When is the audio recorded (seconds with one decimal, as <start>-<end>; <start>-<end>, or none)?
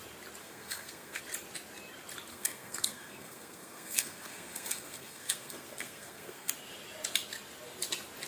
0.0-0.4; 1.2-2.3; 6.5-8.3